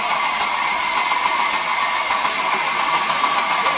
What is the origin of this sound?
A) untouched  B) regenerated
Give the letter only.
A